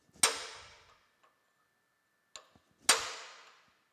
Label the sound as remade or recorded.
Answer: recorded